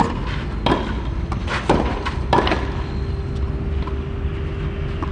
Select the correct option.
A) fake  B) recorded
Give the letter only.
B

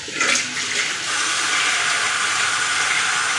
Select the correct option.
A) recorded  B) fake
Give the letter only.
A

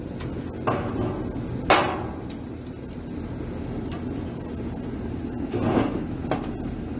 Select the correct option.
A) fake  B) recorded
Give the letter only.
B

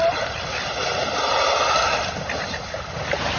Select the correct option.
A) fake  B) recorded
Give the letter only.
B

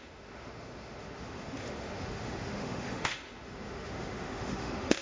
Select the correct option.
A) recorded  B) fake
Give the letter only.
B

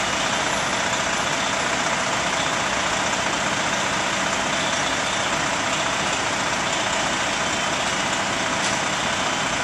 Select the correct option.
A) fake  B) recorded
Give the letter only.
B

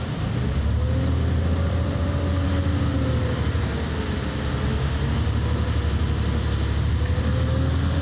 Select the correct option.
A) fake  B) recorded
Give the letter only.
B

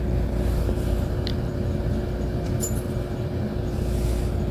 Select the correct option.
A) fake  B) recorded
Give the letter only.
B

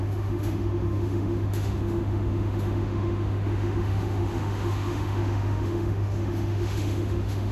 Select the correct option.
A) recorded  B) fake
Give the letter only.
B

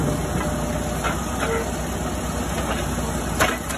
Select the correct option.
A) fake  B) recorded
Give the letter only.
B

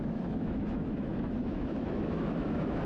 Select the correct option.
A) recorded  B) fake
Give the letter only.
B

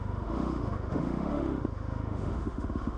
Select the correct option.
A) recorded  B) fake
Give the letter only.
B